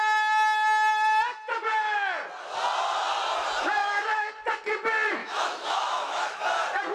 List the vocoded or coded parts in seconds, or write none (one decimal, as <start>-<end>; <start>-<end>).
3.8-4.3; 5.2-6.4